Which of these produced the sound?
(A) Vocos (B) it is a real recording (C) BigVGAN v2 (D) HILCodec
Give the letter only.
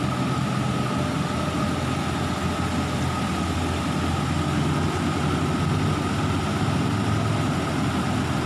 B